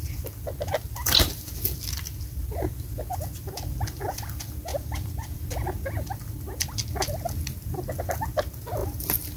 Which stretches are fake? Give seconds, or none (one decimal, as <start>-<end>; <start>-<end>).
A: 4.7-5.5

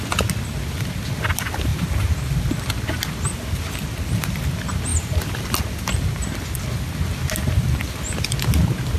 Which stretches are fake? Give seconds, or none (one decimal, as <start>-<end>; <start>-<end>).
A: 4.9-5.6